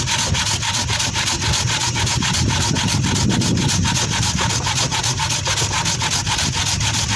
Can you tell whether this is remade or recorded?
recorded